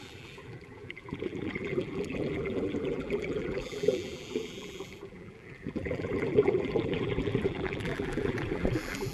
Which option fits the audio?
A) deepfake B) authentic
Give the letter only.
A